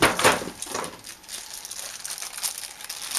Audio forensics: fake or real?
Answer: real